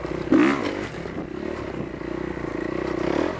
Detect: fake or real real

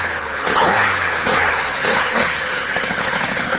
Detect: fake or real fake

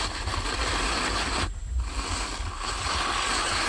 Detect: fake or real real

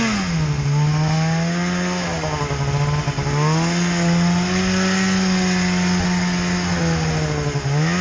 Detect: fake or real real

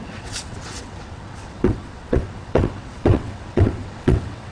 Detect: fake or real fake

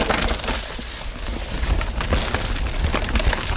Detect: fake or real real